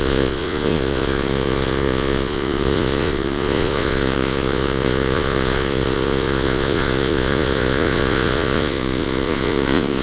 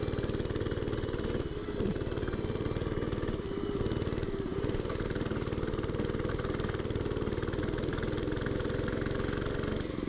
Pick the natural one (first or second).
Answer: second